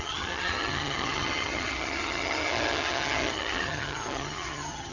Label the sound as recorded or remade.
remade